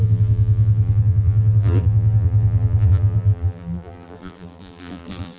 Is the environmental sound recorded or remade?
remade